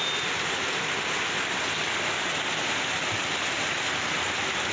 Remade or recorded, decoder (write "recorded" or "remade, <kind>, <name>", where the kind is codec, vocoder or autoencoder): recorded